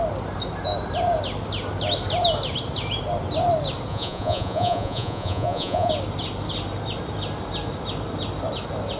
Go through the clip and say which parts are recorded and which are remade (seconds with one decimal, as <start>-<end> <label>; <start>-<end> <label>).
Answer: 0.0-3.9 recorded; 3.9-5.9 remade; 5.9-9.0 recorded